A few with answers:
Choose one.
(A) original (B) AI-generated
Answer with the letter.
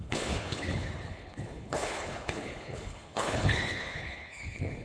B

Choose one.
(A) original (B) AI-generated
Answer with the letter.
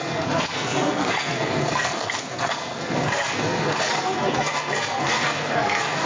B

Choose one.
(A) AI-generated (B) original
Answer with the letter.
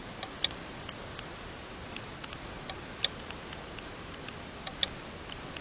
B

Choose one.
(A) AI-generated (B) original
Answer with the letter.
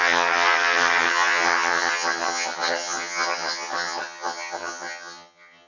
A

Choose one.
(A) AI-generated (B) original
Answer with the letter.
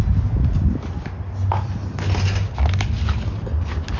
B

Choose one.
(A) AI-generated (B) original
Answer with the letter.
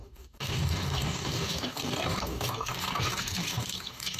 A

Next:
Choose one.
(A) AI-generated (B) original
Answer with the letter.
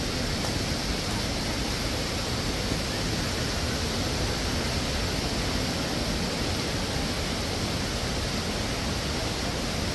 B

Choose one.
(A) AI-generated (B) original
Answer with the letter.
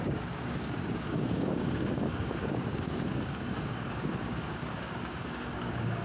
A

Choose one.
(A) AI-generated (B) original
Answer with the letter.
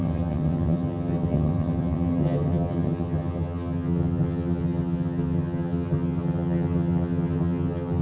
A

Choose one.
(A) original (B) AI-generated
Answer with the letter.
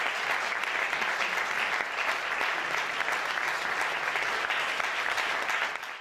A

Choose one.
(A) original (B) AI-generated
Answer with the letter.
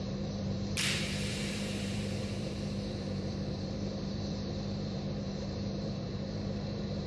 B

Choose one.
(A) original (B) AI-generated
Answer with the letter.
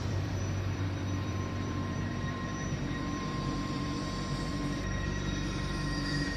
B